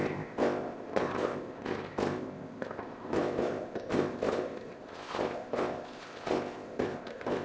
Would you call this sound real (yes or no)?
no